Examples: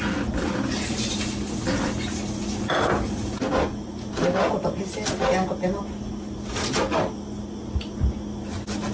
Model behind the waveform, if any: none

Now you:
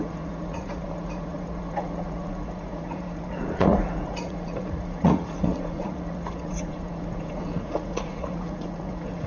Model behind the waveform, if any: vocoder, Vocos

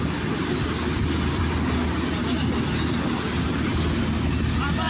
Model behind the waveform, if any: none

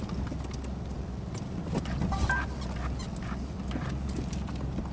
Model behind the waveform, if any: none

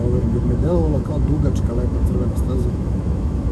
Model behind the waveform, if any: autoencoder, DAC-VAE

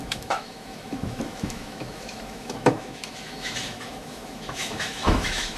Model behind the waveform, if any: autoencoder, DAC-VAE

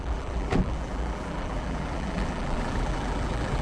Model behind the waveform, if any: vocoder, BigVGAN v2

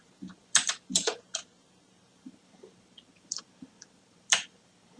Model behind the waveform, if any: vocoder, BigVGAN v2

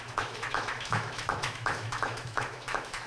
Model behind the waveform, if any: autoencoder, DAC-VAE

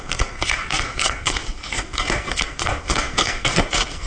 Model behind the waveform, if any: codec, SNAC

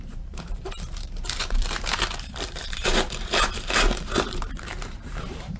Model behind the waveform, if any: vocoder, BigVGAN v2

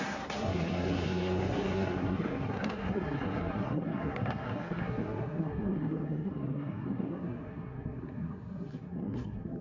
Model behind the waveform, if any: codec, SNAC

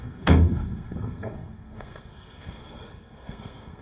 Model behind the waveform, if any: codec, SNAC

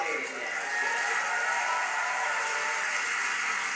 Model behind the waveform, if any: none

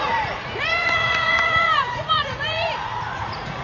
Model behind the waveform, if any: vocoder, Vocos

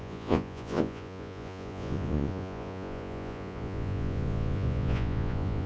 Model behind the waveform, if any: vocoder, Vocos